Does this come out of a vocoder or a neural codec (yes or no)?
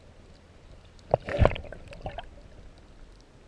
no